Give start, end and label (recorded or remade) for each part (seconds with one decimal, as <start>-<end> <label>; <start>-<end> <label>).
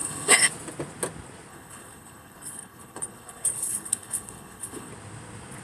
0.0-0.5 remade; 0.5-1.5 recorded; 1.5-4.9 remade; 4.9-5.6 recorded